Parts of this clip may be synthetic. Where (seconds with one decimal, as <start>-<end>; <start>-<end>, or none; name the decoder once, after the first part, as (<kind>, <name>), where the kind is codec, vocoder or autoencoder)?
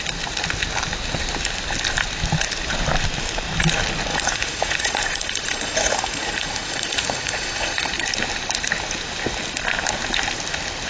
4.1-7.9 (vocoder, Vocos)